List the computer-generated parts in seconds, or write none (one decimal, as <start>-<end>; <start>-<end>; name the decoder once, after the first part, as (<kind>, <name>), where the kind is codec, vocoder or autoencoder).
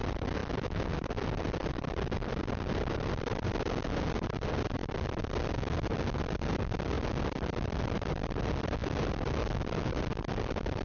none